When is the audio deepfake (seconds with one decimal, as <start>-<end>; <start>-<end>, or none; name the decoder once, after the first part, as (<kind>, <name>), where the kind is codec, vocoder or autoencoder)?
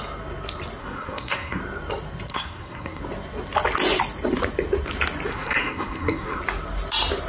0.8-1.6 (codec, SNAC); 2.3-3.0; 5.3-6.4